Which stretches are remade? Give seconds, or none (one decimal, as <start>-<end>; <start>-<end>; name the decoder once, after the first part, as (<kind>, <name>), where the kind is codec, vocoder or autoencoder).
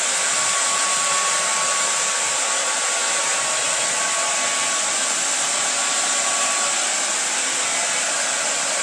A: none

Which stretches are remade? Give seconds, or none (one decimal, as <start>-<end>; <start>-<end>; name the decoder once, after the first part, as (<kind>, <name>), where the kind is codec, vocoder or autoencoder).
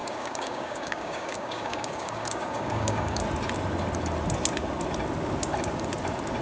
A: 0.0-3.2 (codec, DAC)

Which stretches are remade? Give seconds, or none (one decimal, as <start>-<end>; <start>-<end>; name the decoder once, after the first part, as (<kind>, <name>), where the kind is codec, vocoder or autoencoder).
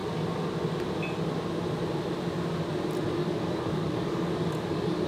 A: 3.2-5.1 (codec, DAC)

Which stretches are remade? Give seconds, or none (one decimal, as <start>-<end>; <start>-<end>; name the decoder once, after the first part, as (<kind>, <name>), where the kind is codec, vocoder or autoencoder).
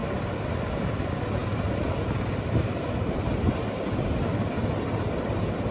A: none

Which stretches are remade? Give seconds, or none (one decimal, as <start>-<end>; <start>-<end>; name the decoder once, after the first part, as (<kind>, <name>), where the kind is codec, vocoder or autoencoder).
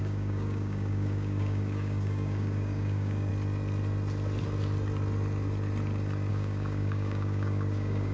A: 0.0-3.3 (codec, DAC); 6.3-8.1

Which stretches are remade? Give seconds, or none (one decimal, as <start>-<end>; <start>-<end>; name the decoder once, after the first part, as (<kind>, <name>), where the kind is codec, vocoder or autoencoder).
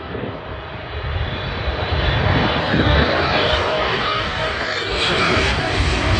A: 0.0-0.4 (codec, DAC); 2.6-6.2